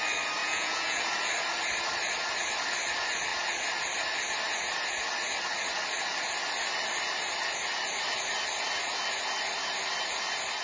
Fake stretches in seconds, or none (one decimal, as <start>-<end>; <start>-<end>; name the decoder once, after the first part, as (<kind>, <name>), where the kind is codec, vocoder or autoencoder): 0.4-1.0 (vocoder, Vocos)